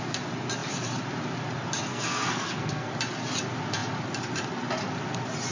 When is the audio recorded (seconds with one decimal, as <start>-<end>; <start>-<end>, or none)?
0.0-1.9; 2.9-5.5

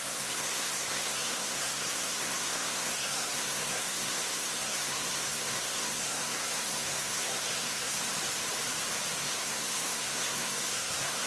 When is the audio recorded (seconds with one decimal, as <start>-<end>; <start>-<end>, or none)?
8.0-9.2

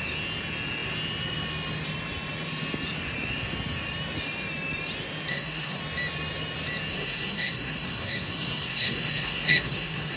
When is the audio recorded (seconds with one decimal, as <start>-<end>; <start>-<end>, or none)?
0.0-5.3; 5.8-6.9

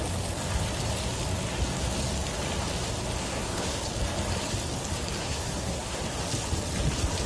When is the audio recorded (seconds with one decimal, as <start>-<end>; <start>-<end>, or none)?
0.0-3.2; 3.8-5.2; 6.0-7.3

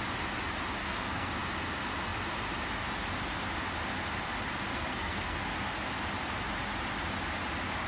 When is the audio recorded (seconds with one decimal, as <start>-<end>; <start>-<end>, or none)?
0.0-0.8; 1.3-4.7; 5.4-7.9

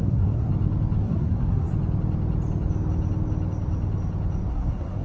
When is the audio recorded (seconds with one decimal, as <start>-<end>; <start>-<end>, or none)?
0.5-1.0; 1.7-4.5

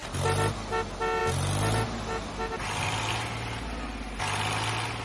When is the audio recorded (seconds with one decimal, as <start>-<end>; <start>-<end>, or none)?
0.0-5.0